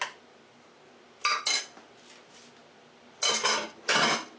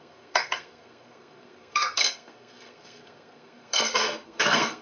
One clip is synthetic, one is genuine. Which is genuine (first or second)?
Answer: first